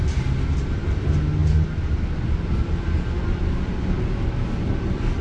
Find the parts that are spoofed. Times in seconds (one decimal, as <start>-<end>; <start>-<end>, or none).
none